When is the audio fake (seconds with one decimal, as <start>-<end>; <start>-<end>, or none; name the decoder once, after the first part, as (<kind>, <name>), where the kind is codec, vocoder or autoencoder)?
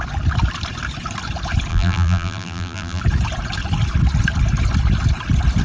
1.7-3.0 (vocoder, BigVGAN v2)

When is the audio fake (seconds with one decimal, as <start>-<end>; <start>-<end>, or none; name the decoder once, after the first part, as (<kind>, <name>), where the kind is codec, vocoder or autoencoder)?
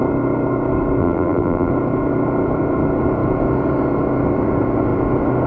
1.0-1.7 (vocoder, BigVGAN v2)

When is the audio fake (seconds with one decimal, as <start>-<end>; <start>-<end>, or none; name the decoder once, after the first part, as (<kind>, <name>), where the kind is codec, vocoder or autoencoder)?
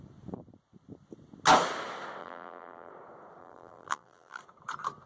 2.2-2.9 (vocoder, BigVGAN v2); 3.4-4.4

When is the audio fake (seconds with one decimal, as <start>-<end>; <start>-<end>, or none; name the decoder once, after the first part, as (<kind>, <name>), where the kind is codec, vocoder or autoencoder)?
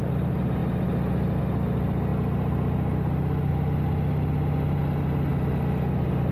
none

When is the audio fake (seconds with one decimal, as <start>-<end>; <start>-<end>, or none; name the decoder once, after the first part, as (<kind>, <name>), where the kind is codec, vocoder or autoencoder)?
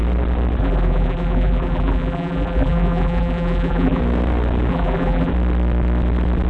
0.6-4.0 (vocoder, BigVGAN v2); 4.7-5.3